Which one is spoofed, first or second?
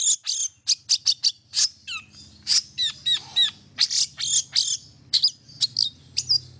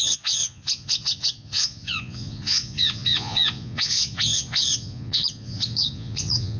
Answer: second